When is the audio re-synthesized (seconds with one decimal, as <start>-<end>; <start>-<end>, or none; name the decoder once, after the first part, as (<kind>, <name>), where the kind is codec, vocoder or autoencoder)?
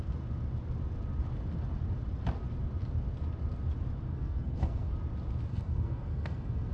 4.1-4.9 (codec, SNAC); 5.5-6.7